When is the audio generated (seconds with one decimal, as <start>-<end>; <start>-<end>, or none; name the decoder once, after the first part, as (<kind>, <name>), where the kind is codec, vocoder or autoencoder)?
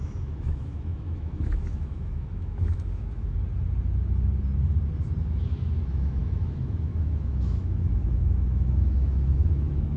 0.0-3.4 (autoencoder, DAC-VAE); 5.2-10.0